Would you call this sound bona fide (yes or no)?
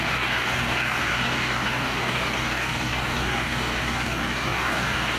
no